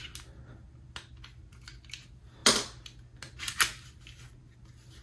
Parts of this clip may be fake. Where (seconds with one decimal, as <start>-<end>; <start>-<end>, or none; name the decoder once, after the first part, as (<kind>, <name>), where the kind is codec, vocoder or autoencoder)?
none